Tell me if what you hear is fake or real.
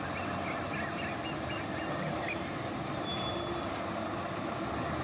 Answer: real